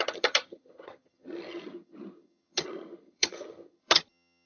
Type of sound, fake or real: fake